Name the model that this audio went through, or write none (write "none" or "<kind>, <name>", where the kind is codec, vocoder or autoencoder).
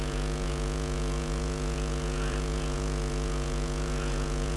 vocoder, Vocos